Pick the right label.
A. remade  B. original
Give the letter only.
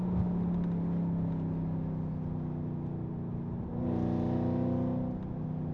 B